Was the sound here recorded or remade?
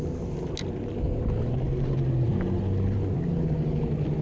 recorded